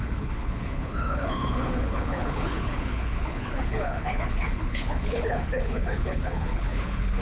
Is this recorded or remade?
remade